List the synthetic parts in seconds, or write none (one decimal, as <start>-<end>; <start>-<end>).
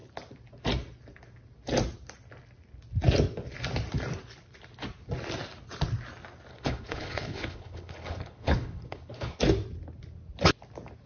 6.5-9.4